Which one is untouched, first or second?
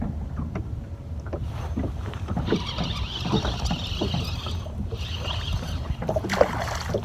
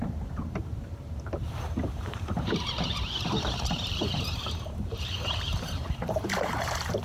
first